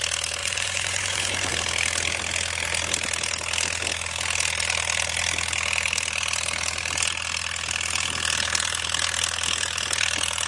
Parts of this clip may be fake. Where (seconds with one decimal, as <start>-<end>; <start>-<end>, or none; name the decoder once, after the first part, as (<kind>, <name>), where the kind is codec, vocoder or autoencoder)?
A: 0.4-1.5 (vocoder, Vocos)